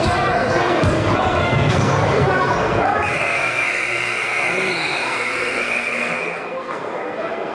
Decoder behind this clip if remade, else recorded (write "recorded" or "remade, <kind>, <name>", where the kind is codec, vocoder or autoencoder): remade, codec, SNAC